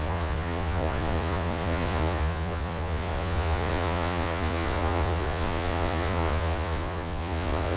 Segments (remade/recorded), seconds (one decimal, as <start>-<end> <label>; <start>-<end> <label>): 0.0-7.8 remade